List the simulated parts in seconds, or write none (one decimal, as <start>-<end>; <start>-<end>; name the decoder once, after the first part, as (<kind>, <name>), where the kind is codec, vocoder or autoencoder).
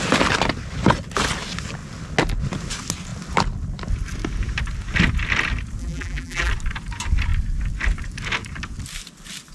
5.8-6.5 (vocoder, BigVGAN v2)